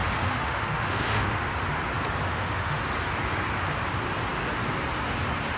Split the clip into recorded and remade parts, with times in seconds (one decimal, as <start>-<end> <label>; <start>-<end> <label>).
0.0-1.5 remade; 1.5-2.2 recorded; 2.2-2.8 remade; 2.8-5.6 recorded